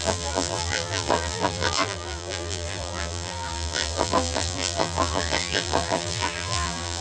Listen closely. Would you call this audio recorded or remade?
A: remade